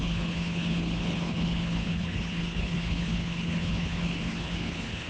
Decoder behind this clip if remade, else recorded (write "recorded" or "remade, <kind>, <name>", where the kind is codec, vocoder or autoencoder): remade, codec, HILCodec